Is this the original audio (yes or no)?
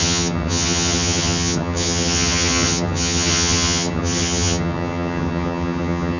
no